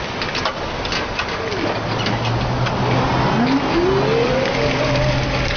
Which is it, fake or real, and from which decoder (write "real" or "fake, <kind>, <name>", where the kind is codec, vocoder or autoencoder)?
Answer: real